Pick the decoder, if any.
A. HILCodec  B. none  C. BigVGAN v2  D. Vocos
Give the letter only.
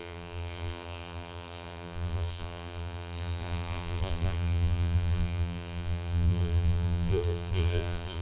C